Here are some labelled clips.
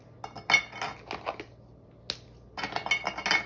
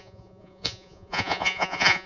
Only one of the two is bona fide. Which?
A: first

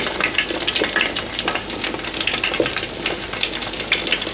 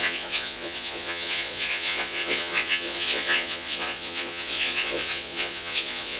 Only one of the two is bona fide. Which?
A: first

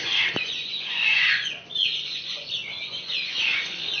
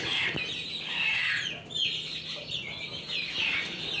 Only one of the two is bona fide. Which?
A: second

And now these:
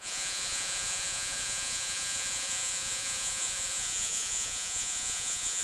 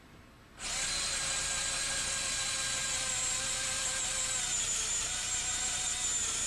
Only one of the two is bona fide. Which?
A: second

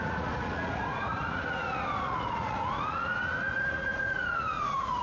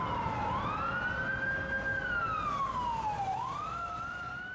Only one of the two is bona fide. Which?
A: second